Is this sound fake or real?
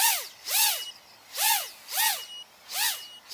real